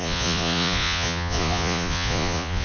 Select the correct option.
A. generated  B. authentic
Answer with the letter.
A